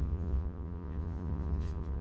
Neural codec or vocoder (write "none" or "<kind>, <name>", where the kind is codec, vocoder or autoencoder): vocoder, Vocos